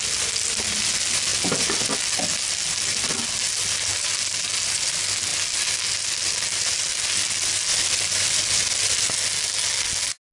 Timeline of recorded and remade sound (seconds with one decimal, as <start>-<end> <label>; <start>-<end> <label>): 0.0-7.7 recorded; 7.7-9.1 remade; 9.1-10.3 recorded